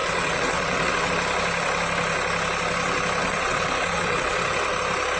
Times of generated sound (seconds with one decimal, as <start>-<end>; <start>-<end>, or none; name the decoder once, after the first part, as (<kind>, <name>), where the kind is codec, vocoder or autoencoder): 0.0-1.1 (vocoder, WaveNeXt); 3.2-4.7